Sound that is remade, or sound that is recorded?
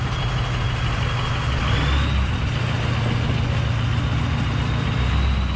recorded